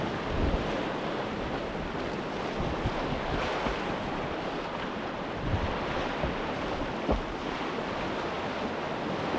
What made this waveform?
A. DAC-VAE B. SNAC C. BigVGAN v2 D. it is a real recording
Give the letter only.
D